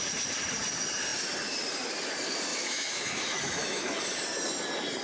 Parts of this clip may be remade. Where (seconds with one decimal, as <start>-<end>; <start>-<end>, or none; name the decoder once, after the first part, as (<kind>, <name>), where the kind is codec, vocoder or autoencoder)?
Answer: 2.5-4.0 (autoencoder, DAC-VAE)